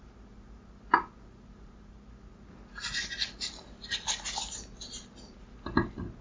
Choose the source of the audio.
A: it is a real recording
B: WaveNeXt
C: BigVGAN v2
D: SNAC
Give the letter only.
A